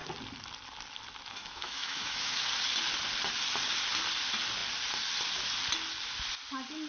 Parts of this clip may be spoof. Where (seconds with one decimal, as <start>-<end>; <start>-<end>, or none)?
1.4-2.5